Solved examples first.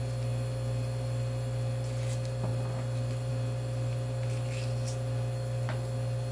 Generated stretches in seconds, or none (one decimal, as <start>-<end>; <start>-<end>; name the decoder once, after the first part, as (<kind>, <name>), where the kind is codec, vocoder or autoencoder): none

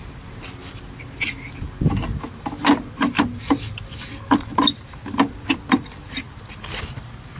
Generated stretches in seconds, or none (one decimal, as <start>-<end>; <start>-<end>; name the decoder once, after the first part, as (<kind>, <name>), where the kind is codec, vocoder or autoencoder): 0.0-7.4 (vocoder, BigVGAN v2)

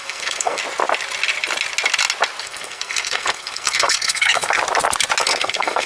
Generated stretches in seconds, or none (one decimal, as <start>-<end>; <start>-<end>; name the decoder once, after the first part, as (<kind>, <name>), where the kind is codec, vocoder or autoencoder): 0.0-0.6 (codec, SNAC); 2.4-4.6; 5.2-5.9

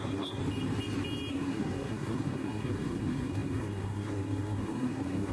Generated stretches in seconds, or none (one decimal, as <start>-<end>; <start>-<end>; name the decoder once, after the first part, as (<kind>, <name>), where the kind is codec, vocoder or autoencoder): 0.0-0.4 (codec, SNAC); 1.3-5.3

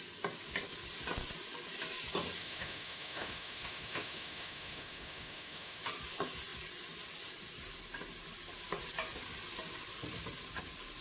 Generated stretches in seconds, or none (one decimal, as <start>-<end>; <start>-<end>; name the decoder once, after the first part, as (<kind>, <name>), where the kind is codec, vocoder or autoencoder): 2.4-5.8 (autoencoder, DAC-VAE)